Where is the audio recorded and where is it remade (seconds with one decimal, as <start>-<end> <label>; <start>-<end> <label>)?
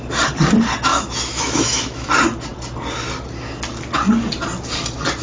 0.0-0.9 recorded; 0.9-2.1 remade; 2.1-5.2 recorded